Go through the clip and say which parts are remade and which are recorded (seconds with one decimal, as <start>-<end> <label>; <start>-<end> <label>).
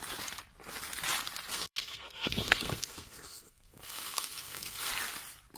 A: 0.0-1.5 recorded; 1.5-4.9 remade; 4.9-5.6 recorded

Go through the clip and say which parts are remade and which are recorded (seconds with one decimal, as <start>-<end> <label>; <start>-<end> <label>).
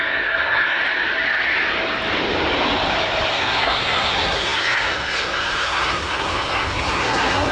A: 0.0-0.8 remade; 0.8-3.3 recorded; 3.3-7.5 remade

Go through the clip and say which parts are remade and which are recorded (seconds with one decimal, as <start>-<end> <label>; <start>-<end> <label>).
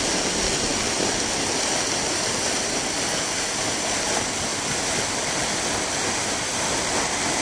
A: 0.0-7.4 recorded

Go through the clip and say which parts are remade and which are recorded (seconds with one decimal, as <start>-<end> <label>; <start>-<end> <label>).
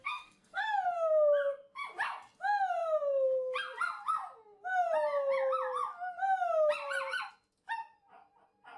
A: 0.0-0.6 remade; 0.6-8.8 recorded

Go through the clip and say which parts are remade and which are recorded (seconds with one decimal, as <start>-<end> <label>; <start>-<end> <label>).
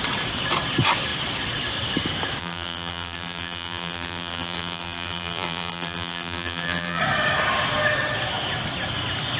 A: 0.0-2.4 recorded; 2.4-7.0 remade; 7.0-9.4 recorded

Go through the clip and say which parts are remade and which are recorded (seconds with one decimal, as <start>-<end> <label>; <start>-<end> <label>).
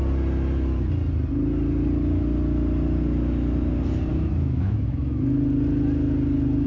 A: 0.0-4.1 recorded; 4.1-5.2 remade; 5.2-6.7 recorded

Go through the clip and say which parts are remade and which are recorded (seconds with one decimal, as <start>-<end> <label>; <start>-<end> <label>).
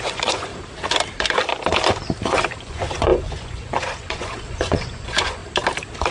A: 0.0-0.5 remade; 0.5-2.6 recorded; 2.6-5.4 remade; 5.4-6.1 recorded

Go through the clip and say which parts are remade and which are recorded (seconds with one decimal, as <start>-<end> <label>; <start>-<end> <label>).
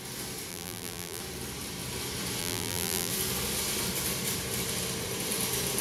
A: 0.0-0.5 recorded; 0.5-1.2 remade; 1.2-2.4 recorded; 2.4-3.1 remade; 3.1-5.8 recorded